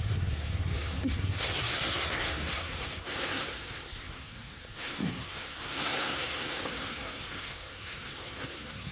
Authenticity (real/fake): fake